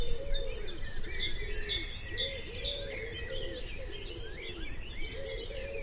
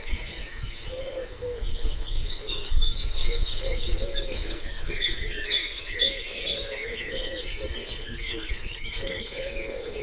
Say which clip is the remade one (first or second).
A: second